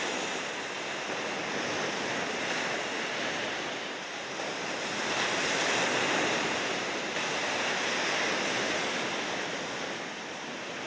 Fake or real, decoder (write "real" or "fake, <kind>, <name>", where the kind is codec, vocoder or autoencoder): real